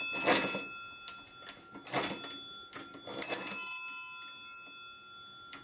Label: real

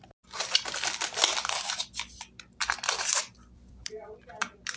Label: fake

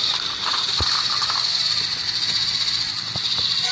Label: real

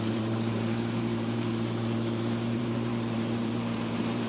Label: fake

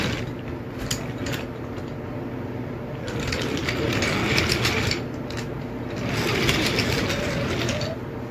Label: real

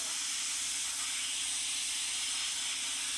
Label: real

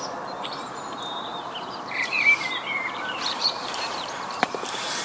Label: fake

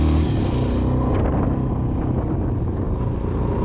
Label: real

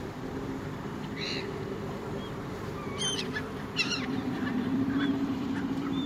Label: fake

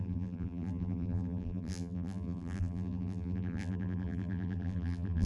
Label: fake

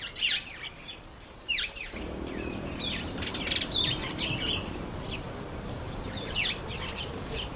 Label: fake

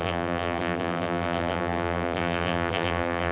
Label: fake